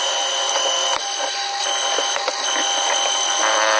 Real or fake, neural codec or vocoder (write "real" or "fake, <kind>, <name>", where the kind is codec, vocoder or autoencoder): real